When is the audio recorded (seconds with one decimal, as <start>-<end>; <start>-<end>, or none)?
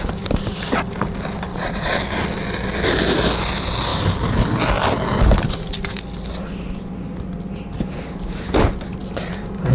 0.0-1.5; 2.0-9.7